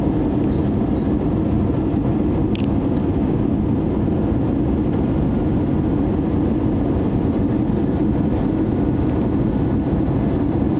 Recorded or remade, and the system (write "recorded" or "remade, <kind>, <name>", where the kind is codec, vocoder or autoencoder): recorded